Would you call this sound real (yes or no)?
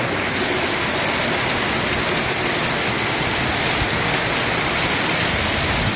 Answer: yes